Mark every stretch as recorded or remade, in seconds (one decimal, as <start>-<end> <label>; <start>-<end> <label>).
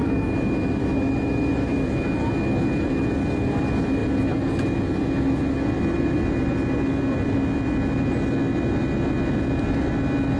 0.0-1.9 remade; 1.9-10.4 recorded